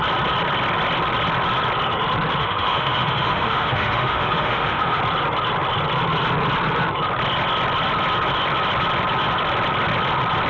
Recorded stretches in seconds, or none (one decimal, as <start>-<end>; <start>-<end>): 0.0-2.4; 5.0-10.5